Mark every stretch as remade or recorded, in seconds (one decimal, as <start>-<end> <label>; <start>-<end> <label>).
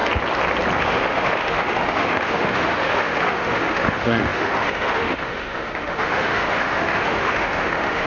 0.0-0.8 recorded; 0.8-8.1 remade